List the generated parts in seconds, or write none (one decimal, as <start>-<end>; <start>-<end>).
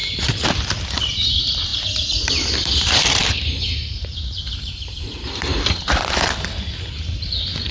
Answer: 0.8-6.0; 6.8-7.7